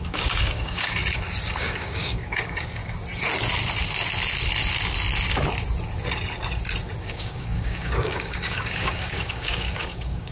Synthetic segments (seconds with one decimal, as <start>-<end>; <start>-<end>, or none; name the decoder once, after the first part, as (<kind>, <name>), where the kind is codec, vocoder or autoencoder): 0.0-1.0 (codec, DAC); 1.6-2.8; 7.0-10.3